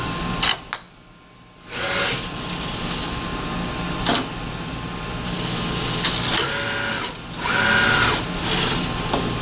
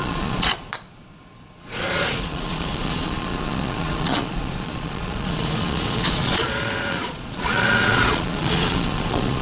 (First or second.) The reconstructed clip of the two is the second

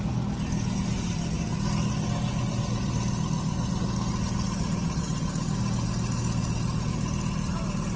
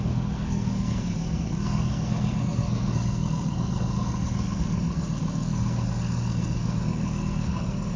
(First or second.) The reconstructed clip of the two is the second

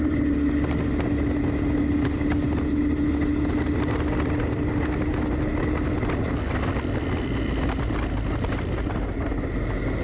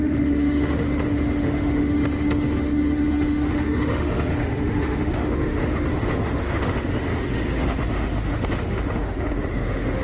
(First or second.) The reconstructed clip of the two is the second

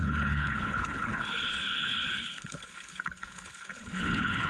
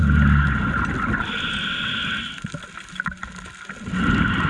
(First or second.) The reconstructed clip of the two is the first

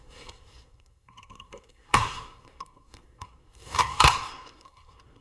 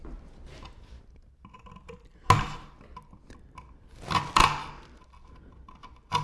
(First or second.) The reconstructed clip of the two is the first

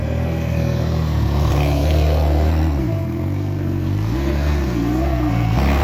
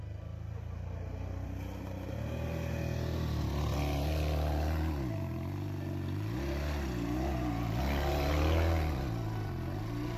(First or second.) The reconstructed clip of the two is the first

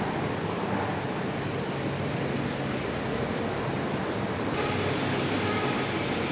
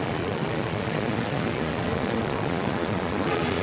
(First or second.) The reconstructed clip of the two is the second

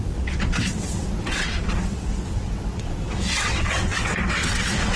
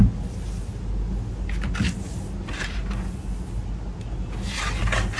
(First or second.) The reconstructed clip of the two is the first